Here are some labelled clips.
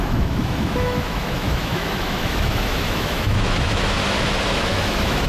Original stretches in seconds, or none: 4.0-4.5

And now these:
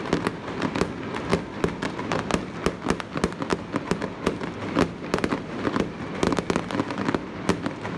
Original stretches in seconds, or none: 0.0-8.0

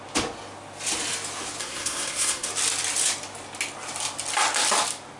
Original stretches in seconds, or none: 0.0-1.6; 2.5-5.2